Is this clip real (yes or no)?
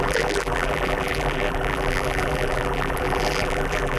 no